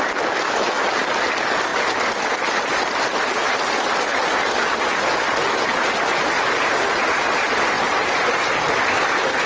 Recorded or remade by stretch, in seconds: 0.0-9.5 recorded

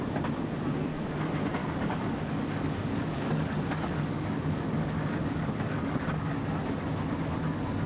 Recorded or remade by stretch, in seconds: 0.0-1.6 recorded; 1.6-6.3 remade; 6.3-7.9 recorded

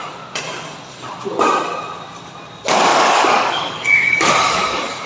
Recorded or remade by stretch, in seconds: 0.0-2.9 recorded; 2.9-5.1 remade

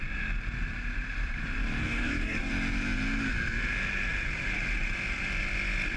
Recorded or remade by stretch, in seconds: 0.0-1.8 recorded; 1.8-2.5 remade; 2.5-6.0 recorded

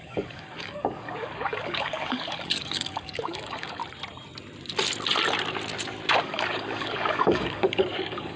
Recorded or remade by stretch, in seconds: 0.0-3.8 remade; 3.8-6.2 recorded; 6.2-8.4 remade

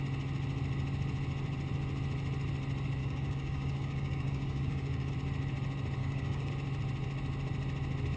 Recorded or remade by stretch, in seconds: 0.0-3.0 recorded; 3.0-5.1 remade; 5.1-6.0 recorded; 6.0-6.5 remade; 6.5-8.2 recorded